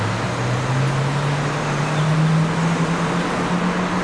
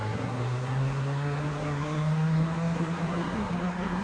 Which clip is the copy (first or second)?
second